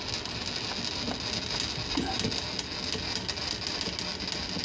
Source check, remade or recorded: recorded